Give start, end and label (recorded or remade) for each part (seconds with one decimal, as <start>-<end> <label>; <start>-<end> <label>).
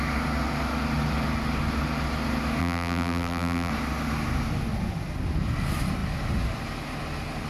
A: 0.0-2.6 recorded; 2.6-3.7 remade; 3.7-7.5 recorded